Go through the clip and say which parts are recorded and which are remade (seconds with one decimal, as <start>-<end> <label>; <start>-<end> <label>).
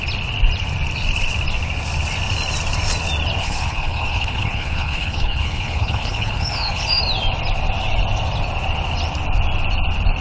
0.0-3.4 recorded; 3.4-7.0 remade; 7.0-10.2 recorded